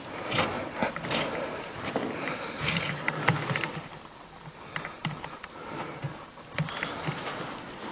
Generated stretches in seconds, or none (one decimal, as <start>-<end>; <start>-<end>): 0.0-0.8; 1.5-3.9; 7.5-7.9

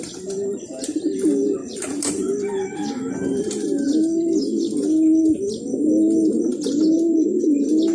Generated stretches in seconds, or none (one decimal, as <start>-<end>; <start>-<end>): 1.6-2.3

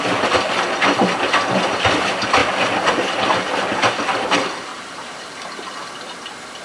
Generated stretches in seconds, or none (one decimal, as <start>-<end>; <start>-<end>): 4.7-5.7